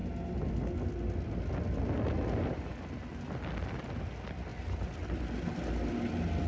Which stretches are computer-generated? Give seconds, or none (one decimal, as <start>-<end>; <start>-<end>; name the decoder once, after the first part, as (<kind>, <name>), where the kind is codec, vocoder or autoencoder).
none